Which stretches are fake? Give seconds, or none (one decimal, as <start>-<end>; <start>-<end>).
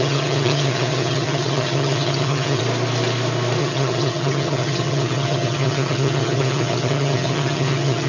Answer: 0.0-2.6; 3.6-8.1